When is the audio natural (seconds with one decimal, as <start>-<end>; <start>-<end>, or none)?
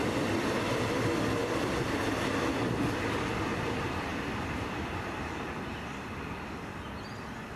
0.0-4.1; 6.6-7.6